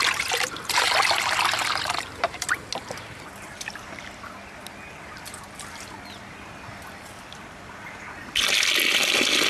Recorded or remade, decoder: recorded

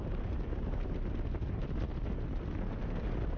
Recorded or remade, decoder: recorded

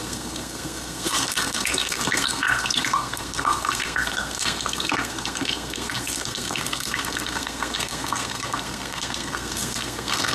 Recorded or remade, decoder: remade, codec, SNAC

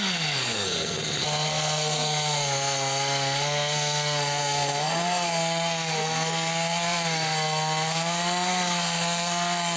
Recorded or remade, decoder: remade, codec, SNAC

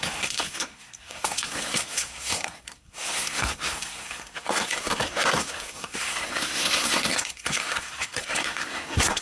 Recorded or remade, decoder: remade, codec, SNAC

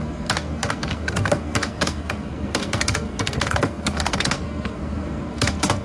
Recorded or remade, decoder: remade, codec, SNAC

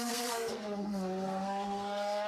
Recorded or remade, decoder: remade, codec, SNAC